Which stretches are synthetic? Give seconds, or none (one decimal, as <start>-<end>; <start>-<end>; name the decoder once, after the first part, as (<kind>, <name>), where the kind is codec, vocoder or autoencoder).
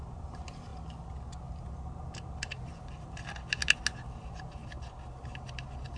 none